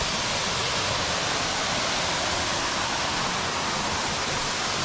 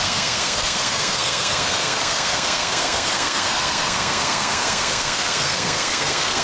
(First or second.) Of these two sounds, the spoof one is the second